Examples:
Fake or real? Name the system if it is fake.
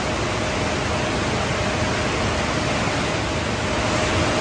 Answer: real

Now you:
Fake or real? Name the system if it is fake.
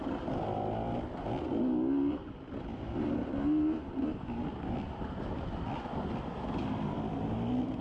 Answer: real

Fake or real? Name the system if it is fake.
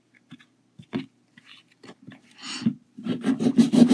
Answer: real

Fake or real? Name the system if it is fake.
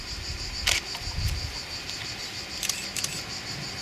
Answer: real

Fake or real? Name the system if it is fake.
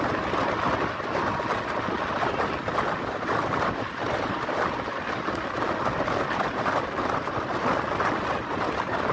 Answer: real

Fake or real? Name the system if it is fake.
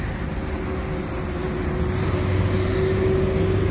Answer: real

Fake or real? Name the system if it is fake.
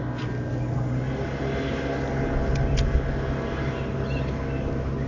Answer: real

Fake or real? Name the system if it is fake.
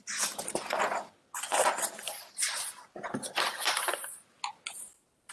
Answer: real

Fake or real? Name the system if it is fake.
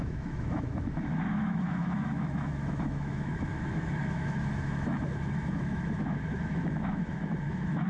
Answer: fake, autoencoder, DAC-VAE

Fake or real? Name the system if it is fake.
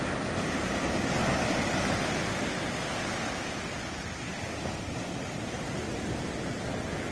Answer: real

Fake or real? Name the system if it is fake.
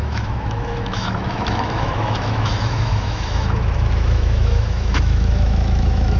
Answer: fake, autoencoder, DAC-VAE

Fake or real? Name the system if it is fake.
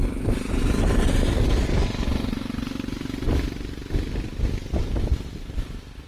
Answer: real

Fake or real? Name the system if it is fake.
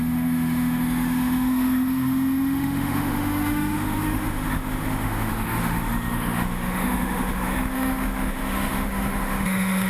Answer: fake, autoencoder, DAC-VAE